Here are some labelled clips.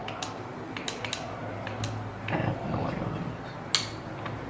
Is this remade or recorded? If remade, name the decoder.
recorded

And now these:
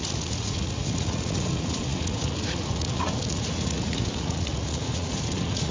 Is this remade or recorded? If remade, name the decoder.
remade, vocoder, Vocos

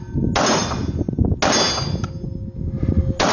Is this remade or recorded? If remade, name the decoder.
recorded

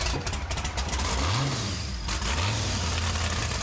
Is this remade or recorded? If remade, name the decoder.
recorded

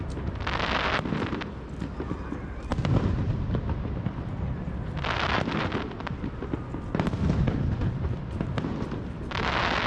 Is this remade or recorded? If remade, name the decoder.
recorded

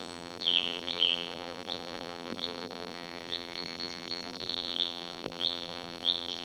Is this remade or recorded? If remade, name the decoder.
remade, vocoder, BigVGAN v2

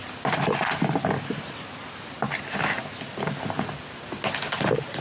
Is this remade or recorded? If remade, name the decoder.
recorded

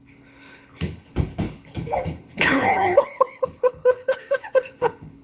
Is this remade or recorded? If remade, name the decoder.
remade, codec, HILCodec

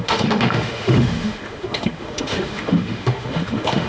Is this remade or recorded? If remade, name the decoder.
remade, autoencoder, DAC-VAE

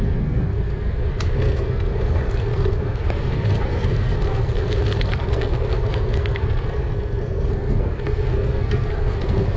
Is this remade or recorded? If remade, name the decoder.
remade, codec, SNAC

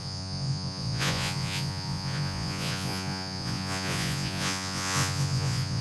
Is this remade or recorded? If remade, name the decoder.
remade, vocoder, Vocos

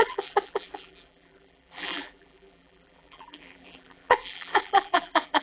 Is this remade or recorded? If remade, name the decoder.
remade, vocoder, BigVGAN v2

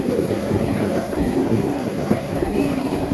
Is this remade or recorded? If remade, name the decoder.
remade, codec, SNAC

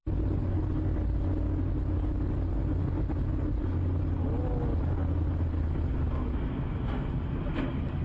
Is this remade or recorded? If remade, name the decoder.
recorded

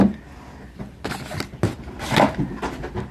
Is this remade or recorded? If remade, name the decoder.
recorded